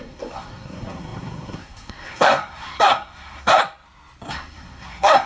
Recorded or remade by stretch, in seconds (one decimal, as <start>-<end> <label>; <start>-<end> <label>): 0.0-3.6 remade; 3.6-4.3 recorded; 4.3-5.3 remade